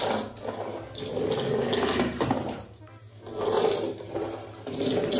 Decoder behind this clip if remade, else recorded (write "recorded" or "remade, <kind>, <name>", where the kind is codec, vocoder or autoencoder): recorded